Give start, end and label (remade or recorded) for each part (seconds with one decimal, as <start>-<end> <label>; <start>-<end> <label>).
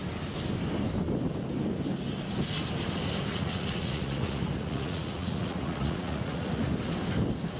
0.0-3.3 recorded; 3.3-6.7 remade; 6.7-7.6 recorded